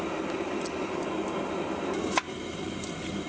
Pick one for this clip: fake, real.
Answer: real